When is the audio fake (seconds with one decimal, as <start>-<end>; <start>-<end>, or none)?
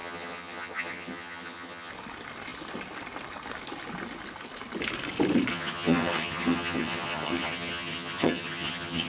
0.0-1.9; 5.5-9.1